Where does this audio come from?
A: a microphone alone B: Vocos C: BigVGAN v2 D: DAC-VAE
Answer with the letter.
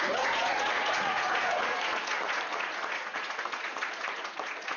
B